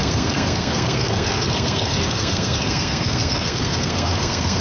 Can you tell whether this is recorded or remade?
remade